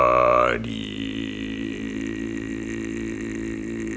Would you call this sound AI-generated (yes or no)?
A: no